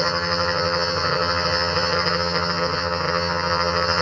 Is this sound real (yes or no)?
no